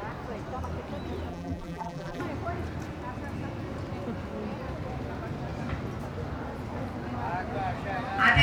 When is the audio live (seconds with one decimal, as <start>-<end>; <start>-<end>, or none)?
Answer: 0.0-1.3; 2.2-8.4